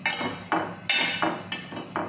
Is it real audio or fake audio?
real